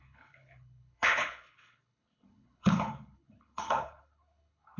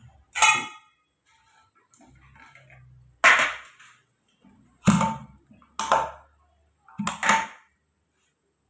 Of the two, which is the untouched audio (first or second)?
second